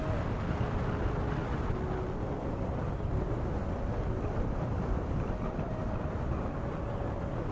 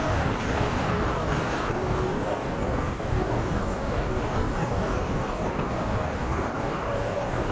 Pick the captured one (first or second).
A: first